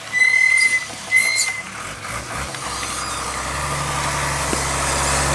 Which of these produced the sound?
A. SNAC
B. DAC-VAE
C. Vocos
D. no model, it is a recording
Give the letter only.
D